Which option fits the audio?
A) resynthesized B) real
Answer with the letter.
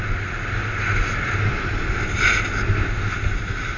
B